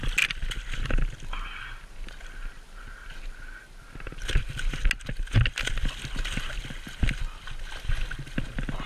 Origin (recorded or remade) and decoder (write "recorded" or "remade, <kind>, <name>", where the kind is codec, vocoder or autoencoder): recorded